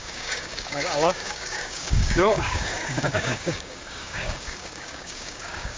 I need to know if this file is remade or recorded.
remade